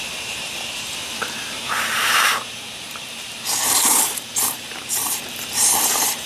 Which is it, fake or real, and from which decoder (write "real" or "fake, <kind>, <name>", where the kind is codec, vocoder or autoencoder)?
fake, vocoder, BigVGAN v2